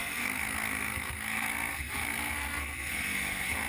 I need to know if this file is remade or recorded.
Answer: remade